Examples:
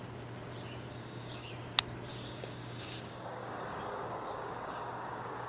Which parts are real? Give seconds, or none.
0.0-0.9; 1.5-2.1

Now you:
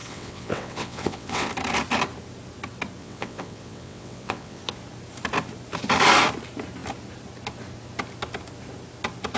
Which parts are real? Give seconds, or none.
1.5-3.0; 4.6-9.4

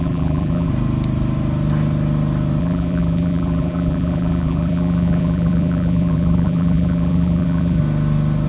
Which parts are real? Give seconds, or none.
0.7-2.6; 7.8-8.5

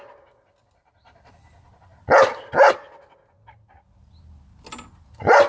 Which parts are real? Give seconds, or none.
0.0-5.5

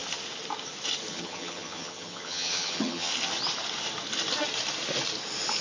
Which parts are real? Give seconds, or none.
0.0-1.1; 3.1-5.6

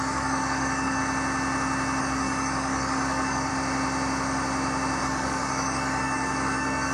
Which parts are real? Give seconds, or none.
1.0-2.0; 3.5-5.0